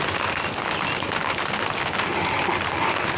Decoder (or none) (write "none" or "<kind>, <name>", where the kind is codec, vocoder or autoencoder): none